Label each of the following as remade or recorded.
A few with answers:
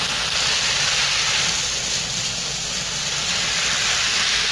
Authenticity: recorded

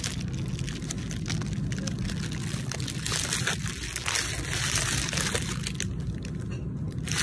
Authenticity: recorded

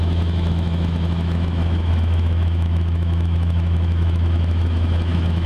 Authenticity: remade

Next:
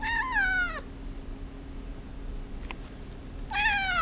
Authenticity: recorded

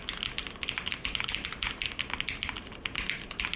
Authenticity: recorded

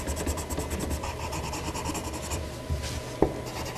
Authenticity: recorded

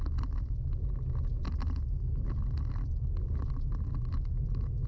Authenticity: recorded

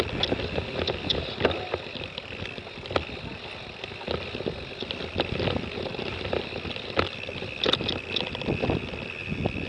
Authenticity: recorded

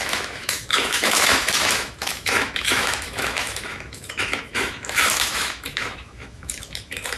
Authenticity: remade